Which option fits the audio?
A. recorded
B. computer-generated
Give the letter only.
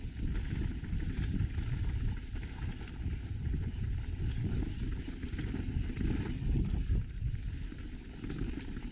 A